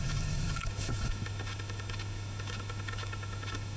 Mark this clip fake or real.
fake